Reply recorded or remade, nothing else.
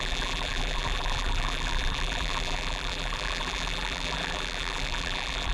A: remade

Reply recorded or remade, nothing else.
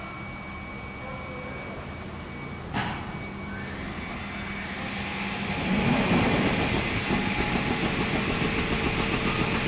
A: recorded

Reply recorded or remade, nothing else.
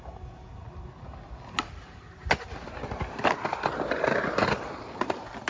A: recorded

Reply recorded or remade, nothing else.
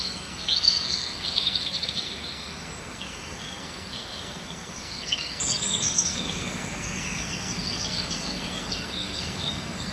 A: remade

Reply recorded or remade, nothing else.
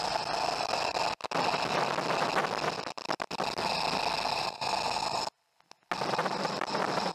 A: recorded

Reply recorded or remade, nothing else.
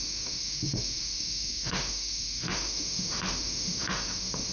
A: remade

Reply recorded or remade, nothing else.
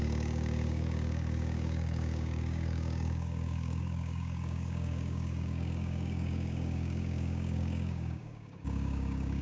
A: remade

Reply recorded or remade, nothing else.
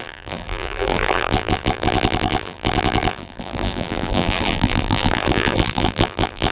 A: remade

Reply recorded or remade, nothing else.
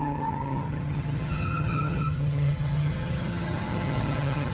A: remade